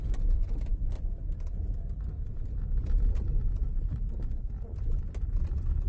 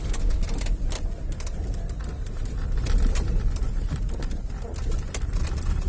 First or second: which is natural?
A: second